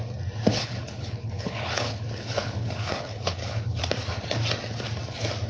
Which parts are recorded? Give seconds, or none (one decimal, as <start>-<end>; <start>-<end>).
0.0-0.5; 3.8-5.5